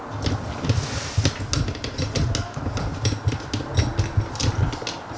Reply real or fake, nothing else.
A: real